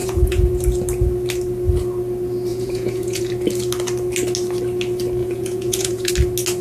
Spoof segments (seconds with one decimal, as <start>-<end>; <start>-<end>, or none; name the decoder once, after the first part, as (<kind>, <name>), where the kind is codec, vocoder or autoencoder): 0.0-0.5 (vocoder, Vocos); 2.5-3.3; 5.2-6.1